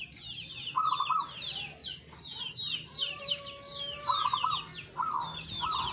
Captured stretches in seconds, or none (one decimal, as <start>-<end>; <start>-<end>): 0.0-5.9